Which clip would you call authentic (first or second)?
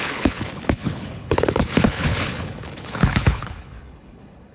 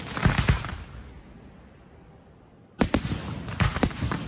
second